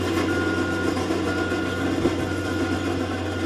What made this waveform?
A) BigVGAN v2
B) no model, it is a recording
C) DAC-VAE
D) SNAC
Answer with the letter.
B